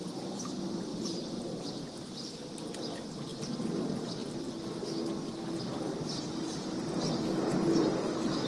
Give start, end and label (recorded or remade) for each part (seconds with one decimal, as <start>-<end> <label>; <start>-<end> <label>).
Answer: 0.0-3.3 remade; 3.3-3.8 recorded; 3.8-4.2 remade; 4.2-5.6 recorded; 5.6-8.5 remade